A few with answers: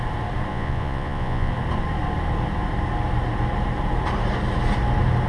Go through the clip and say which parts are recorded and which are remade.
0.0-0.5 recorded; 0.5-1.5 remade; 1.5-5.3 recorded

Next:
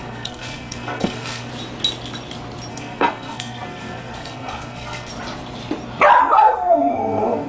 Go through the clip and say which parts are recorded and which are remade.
0.0-1.5 remade; 1.5-2.7 recorded; 2.7-5.1 remade; 5.1-6.2 recorded; 6.2-7.5 remade

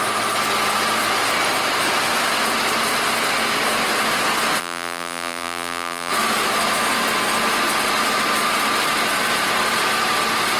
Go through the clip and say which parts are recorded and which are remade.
0.0-4.6 recorded; 4.6-6.1 remade; 6.1-10.6 recorded

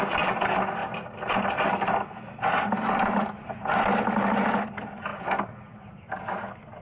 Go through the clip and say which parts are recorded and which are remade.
0.0-6.8 recorded